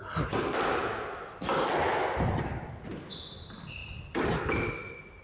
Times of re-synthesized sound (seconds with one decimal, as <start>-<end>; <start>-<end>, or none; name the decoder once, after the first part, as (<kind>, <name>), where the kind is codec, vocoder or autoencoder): none